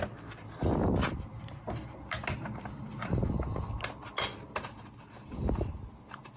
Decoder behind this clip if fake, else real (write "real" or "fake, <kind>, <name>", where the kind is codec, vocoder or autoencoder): real